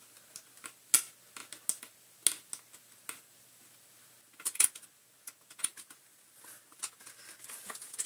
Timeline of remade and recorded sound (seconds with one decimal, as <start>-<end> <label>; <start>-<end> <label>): 0.0-5.7 recorded; 5.7-6.8 remade; 6.8-8.1 recorded